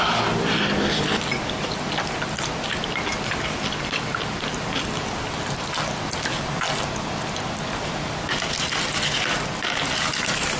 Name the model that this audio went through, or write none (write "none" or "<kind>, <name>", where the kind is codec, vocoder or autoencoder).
none